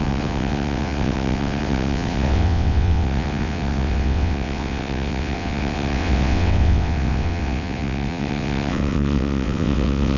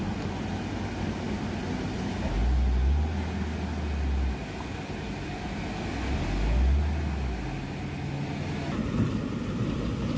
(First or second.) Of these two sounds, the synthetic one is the first